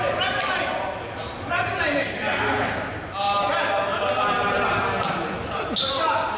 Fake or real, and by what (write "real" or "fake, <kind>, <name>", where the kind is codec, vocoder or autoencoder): real